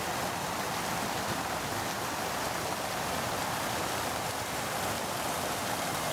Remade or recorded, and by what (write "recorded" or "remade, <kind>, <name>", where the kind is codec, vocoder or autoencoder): remade, vocoder, BigVGAN v2